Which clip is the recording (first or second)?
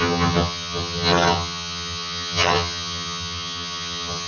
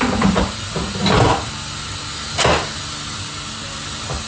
second